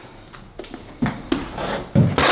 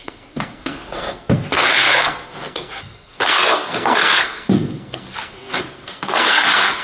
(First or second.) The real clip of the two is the first